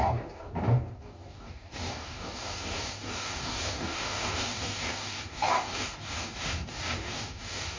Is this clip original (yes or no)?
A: no